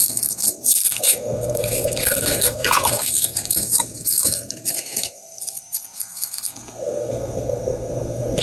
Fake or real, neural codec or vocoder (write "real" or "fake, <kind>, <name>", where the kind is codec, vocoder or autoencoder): fake, codec, SNAC